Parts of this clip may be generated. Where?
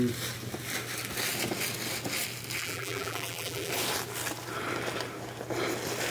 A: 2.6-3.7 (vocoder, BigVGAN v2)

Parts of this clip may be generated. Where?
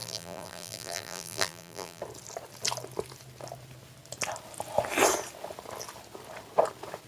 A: 0.0-2.0 (vocoder, BigVGAN v2)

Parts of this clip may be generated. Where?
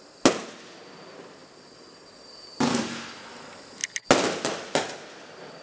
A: none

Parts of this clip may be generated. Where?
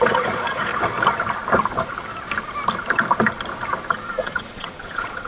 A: 0.0-0.7 (vocoder, Vocos); 3.9-5.3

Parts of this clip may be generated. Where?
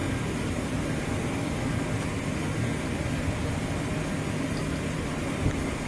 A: none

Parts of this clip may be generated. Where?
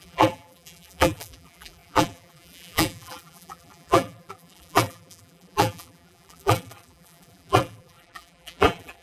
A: 0.0-9.0 (vocoder, BigVGAN v2)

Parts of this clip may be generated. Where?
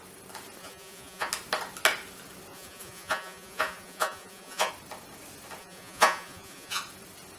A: 0.6-1.3 (vocoder, Vocos); 2.5-4.7; 5.6-6.8